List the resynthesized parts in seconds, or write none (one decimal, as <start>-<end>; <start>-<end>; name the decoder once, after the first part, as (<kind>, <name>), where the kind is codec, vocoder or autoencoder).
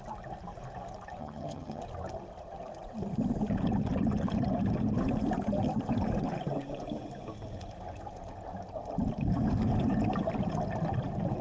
1.2-1.8 (vocoder, HiFi-GAN)